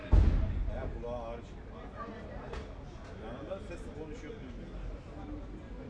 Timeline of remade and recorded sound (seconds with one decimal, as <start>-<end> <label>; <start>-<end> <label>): 0.0-5.9 recorded